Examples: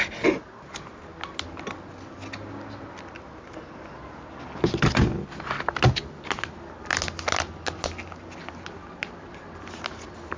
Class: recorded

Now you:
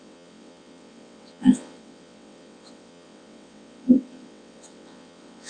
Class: remade